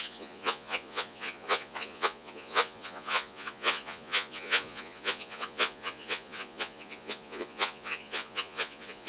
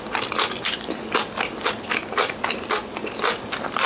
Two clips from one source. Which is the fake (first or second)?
first